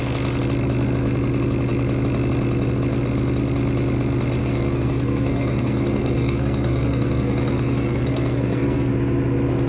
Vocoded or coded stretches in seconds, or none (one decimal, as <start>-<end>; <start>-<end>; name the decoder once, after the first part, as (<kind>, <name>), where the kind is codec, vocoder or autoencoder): 4.4-8.9 (codec, SNAC)